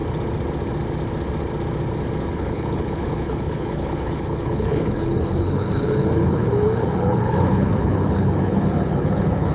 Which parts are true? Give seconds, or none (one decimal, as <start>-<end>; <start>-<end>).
0.0-2.3